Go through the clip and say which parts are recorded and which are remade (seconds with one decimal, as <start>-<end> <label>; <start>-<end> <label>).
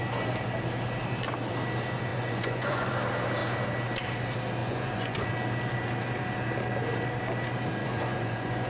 0.0-2.1 recorded; 2.1-2.9 remade; 2.9-4.6 recorded; 4.6-5.3 remade; 5.3-7.8 recorded; 7.8-8.7 remade